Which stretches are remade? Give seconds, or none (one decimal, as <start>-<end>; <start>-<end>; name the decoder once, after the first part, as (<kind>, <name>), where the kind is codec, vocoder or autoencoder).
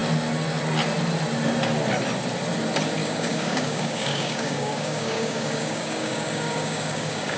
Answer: 3.0-7.4 (codec, DAC)